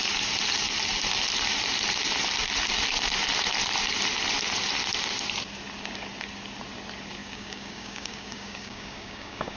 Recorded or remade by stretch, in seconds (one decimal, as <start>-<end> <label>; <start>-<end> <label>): 0.0-7.2 recorded; 7.2-9.6 remade